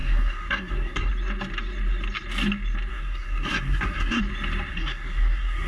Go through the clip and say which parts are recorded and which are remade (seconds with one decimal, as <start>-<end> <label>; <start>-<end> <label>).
0.0-1.1 remade; 1.1-2.9 recorded; 2.9-4.2 remade; 4.2-4.7 recorded; 4.7-5.7 remade

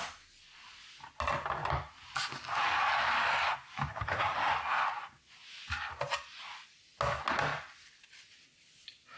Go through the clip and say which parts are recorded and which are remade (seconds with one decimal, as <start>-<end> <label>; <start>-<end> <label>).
0.0-3.9 recorded; 3.9-4.5 remade; 4.5-9.2 recorded

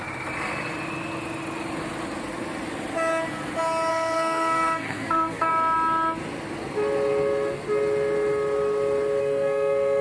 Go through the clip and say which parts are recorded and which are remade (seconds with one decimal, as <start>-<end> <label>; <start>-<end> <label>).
0.0-3.9 recorded; 3.9-5.5 remade; 5.5-9.2 recorded; 9.2-10.0 remade

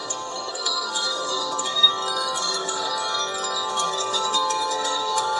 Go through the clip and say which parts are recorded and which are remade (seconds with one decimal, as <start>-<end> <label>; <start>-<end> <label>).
0.0-1.9 remade; 1.9-2.4 recorded; 2.4-2.9 remade; 2.9-3.7 recorded; 3.7-5.4 remade